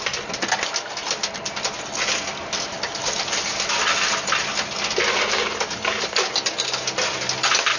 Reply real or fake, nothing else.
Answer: real